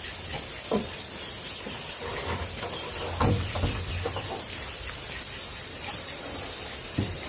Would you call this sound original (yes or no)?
no